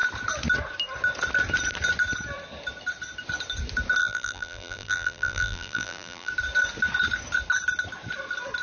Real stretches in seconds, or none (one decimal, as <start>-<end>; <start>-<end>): 0.0-4.0; 6.3-8.6